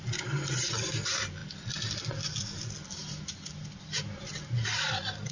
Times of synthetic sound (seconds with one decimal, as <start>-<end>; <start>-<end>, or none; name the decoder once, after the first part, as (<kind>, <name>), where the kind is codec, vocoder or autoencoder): none